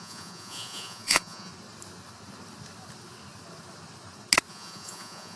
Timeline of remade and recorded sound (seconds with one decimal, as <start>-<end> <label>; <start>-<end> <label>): 0.0-1.5 remade; 1.5-4.5 recorded; 4.5-5.4 remade